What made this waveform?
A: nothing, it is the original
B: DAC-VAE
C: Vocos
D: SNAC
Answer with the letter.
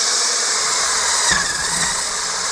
C